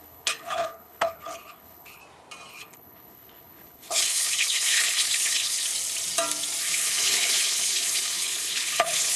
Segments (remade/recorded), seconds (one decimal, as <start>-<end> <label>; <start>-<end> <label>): 0.0-2.0 remade; 2.0-2.5 recorded; 2.5-5.7 remade; 5.7-6.6 recorded; 6.6-9.2 remade